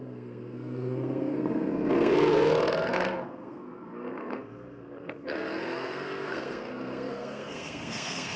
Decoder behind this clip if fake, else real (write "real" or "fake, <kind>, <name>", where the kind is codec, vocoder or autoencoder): fake, codec, SNAC